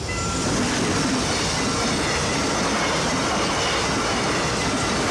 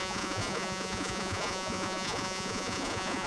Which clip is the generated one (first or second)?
second